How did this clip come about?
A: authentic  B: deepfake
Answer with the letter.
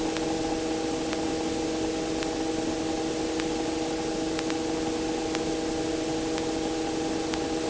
A